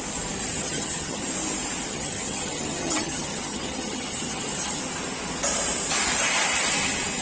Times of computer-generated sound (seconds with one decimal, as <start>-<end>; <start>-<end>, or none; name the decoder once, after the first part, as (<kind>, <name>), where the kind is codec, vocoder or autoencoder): 0.6-1.2 (vocoder, HiFi-GAN); 1.9-4.8